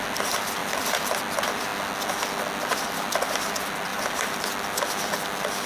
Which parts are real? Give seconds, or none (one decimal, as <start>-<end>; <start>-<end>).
0.0-0.6; 1.1-3.9; 4.4-5.7

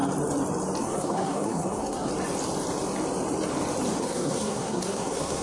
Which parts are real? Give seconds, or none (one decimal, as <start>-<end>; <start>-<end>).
0.0-0.8; 2.1-4.0